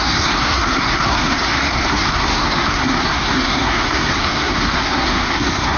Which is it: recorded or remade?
remade